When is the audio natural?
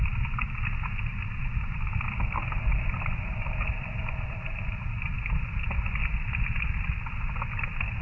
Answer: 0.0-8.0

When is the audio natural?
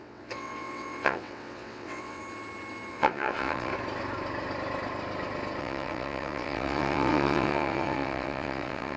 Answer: 2.2-2.9; 3.7-5.6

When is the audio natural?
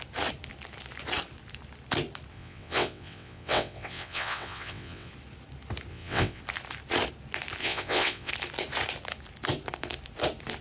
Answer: 0.0-2.3; 5.1-5.9; 6.4-7.6; 8.3-10.6